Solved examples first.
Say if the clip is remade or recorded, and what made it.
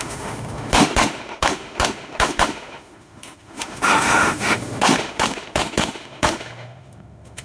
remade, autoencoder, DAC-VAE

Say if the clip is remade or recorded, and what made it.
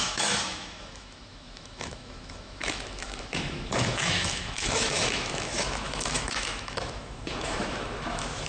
remade, autoencoder, DAC-VAE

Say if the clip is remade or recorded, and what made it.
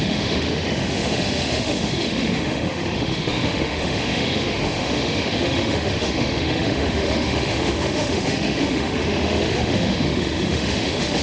remade, autoencoder, DAC-VAE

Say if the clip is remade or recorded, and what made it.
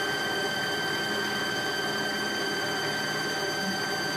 recorded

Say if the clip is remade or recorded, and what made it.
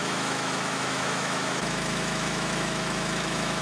remade, autoencoder, DAC-VAE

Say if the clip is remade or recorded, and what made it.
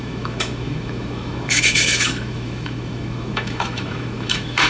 remade, autoencoder, DAC-VAE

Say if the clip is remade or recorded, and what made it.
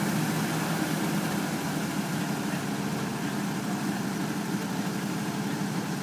recorded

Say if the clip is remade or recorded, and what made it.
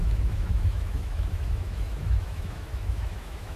remade, autoencoder, DAC-VAE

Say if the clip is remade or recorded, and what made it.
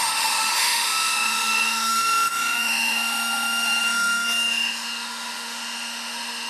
remade, autoencoder, DAC-VAE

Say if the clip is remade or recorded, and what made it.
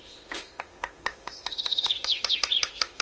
remade, autoencoder, DAC-VAE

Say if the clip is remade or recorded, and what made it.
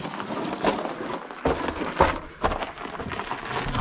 recorded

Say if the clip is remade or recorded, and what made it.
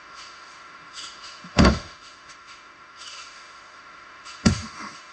remade, autoencoder, DAC-VAE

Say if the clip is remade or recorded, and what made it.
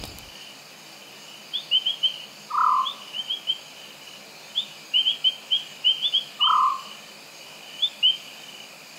recorded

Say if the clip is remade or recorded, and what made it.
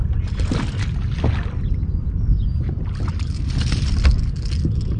recorded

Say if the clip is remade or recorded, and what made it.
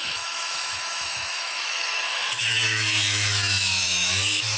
remade, autoencoder, DAC-VAE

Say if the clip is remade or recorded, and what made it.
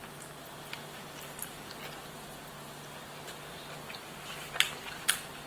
recorded